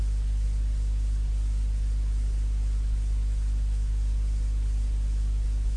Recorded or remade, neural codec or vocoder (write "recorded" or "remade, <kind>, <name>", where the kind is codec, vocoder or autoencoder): recorded